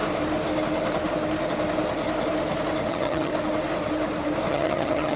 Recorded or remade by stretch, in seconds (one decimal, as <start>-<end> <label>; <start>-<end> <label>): 0.0-2.9 recorded; 2.9-3.3 remade; 3.3-4.5 recorded; 4.5-5.2 remade